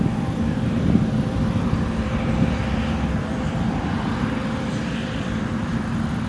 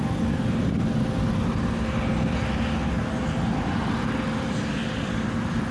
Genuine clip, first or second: second